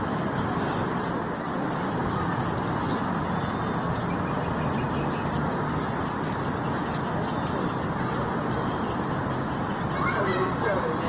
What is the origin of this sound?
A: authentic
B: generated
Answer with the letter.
A